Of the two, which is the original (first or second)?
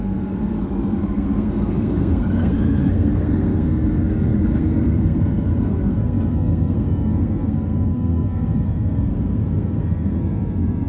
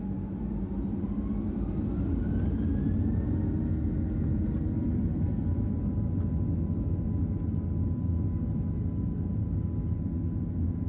second